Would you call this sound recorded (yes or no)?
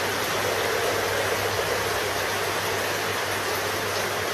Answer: yes